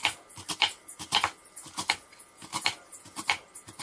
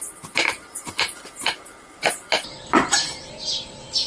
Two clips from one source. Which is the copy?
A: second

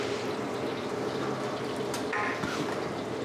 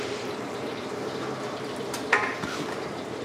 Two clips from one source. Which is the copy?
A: second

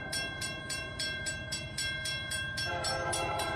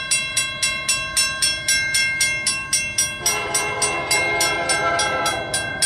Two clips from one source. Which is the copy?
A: first